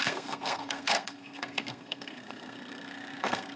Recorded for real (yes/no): no